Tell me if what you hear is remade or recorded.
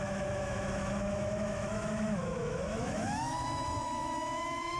remade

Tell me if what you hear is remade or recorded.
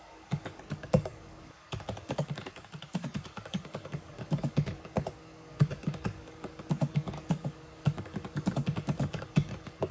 remade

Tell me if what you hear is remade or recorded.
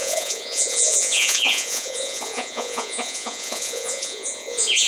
remade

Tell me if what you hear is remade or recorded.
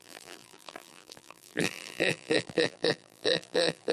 remade